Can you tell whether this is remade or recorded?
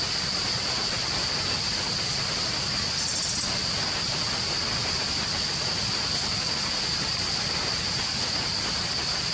recorded